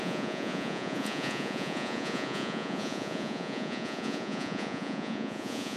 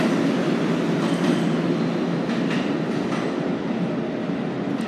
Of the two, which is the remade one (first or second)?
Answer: first